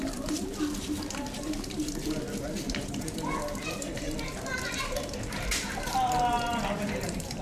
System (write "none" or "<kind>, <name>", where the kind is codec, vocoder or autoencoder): vocoder, BigVGAN v2